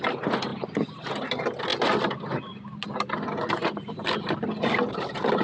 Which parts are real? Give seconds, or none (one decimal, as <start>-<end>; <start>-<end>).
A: 0.0-5.4